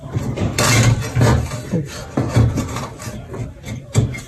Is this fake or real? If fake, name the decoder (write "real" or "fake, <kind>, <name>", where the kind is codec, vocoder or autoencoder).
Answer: real